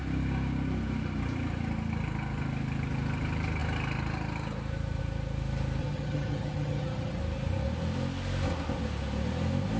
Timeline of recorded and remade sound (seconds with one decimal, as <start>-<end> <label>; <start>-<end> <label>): 0.0-5.8 recorded; 5.8-7.2 remade; 7.2-9.8 recorded

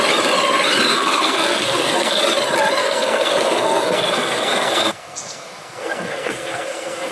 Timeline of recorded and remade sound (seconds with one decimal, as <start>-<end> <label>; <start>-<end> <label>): 0.0-0.9 recorded; 0.9-2.2 remade; 2.2-2.8 recorded; 2.8-7.1 remade

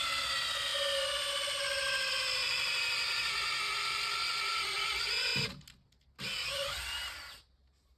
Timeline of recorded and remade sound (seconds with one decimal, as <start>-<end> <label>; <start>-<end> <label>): 0.0-8.0 recorded

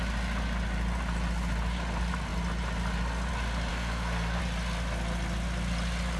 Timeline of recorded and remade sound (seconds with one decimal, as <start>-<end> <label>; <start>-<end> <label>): 0.0-3.7 recorded; 3.7-4.4 remade; 4.4-6.2 recorded

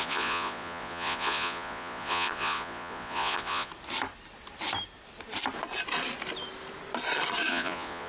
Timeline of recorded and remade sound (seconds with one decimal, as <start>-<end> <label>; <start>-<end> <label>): 0.0-3.7 remade; 3.7-7.5 recorded; 7.5-8.1 remade

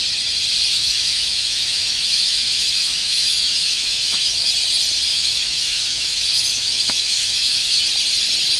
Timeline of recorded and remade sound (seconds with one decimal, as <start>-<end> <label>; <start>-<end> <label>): 0.0-0.7 recorded; 0.7-4.5 remade; 4.5-5.1 recorded; 5.1-7.8 remade; 7.8-8.6 recorded